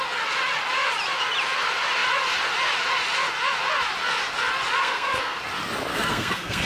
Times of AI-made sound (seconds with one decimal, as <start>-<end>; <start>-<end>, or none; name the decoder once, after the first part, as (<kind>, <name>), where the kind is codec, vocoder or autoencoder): 4.8-5.4 (codec, SNAC); 5.9-6.7